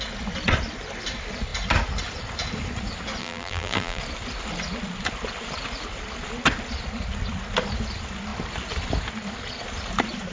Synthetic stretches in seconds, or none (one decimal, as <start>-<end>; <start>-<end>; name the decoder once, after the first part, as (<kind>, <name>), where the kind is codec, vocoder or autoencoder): 3.2-4.0 (vocoder, BigVGAN v2)